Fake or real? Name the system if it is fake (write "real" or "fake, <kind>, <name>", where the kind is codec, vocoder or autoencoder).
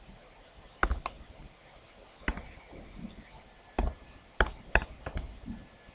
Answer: real